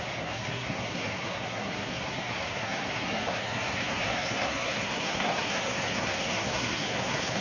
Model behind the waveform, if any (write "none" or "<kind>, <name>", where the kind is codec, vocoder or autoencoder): codec, SNAC